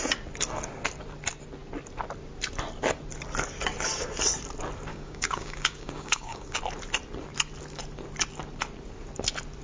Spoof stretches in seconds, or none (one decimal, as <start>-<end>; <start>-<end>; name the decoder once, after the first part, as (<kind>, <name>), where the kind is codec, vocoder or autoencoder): 4.9-6.6 (codec, DAC)